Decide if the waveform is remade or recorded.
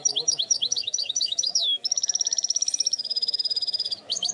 remade